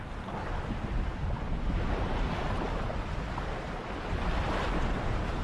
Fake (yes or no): no